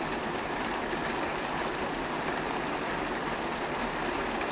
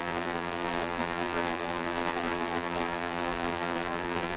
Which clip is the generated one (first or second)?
second